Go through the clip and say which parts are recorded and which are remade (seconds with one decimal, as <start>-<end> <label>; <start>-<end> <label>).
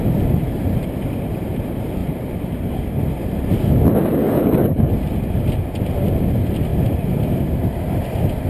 0.0-4.2 recorded; 4.2-4.9 remade; 4.9-8.5 recorded